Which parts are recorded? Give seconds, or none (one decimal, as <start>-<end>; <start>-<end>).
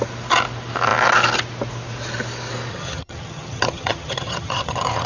0.0-2.7